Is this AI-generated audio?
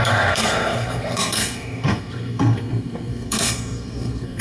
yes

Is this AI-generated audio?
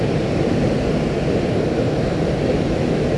no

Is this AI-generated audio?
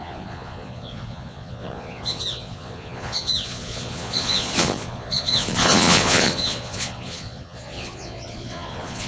yes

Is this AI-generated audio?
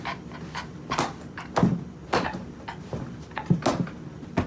no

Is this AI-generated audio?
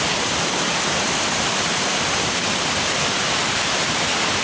no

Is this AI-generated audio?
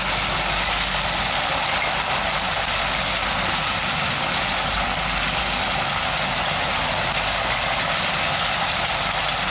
no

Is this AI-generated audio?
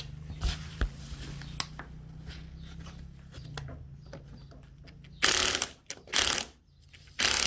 no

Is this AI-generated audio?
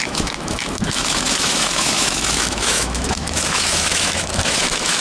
yes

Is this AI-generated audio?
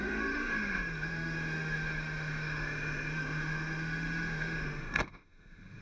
yes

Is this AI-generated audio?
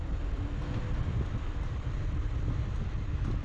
no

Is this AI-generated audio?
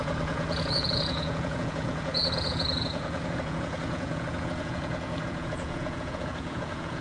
yes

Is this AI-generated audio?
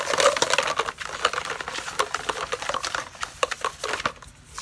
no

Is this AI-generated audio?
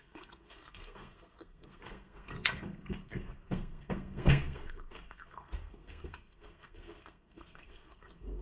yes